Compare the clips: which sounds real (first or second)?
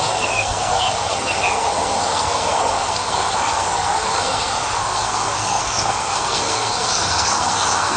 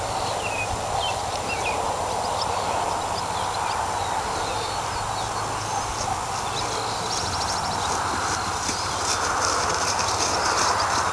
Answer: second